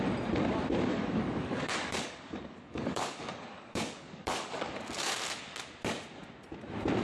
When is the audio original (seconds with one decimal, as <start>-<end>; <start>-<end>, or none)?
0.0-0.9; 5.1-7.0